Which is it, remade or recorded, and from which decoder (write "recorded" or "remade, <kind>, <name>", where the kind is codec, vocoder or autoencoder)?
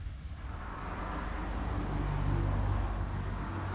recorded